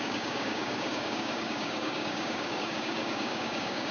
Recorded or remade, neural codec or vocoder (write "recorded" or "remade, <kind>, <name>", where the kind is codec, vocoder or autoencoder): remade, codec, DAC